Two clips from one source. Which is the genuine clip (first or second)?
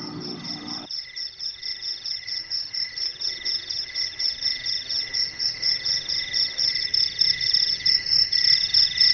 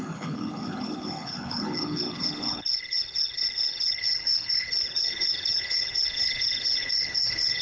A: first